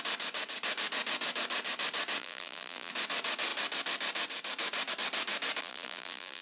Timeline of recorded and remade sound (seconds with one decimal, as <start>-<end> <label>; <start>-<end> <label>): 0.0-2.2 recorded; 2.2-2.9 remade; 2.9-5.6 recorded; 5.6-6.4 remade